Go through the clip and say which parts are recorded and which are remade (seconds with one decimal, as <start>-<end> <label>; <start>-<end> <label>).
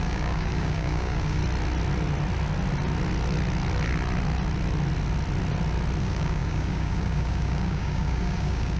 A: 0.0-1.4 remade; 1.4-6.0 recorded; 6.0-8.8 remade